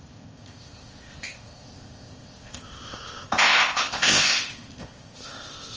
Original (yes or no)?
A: no